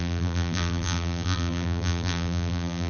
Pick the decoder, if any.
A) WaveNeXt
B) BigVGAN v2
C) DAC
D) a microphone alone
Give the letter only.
B